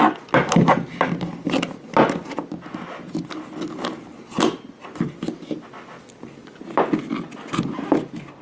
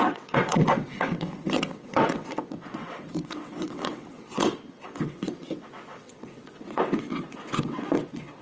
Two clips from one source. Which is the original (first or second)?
first